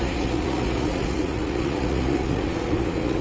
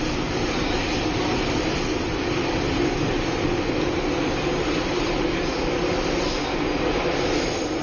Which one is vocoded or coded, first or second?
first